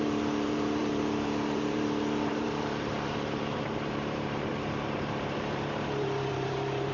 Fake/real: fake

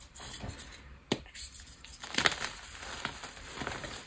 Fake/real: fake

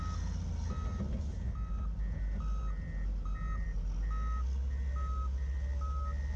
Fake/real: real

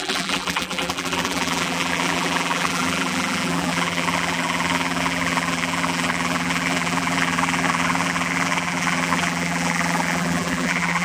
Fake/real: fake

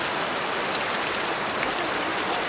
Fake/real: real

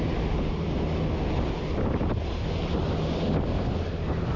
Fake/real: real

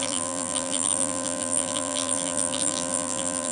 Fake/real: fake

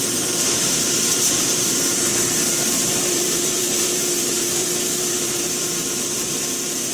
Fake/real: fake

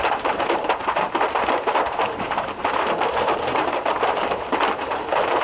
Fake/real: fake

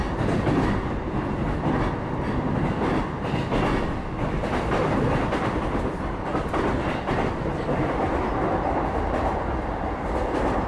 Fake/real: real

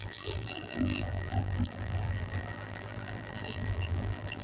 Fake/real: fake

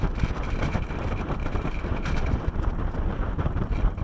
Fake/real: fake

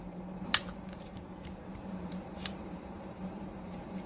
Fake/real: fake